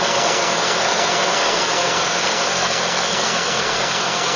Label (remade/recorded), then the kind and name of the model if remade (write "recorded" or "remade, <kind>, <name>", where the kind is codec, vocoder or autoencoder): remade, codec, SNAC